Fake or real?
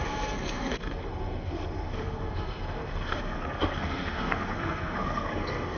fake